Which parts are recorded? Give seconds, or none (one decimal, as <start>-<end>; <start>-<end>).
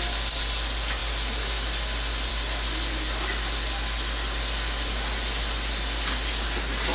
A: 0.0-6.9